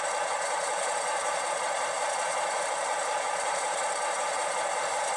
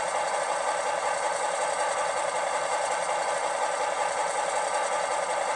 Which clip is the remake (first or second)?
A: first